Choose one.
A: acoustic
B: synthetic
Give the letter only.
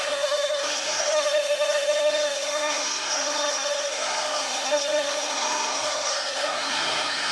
B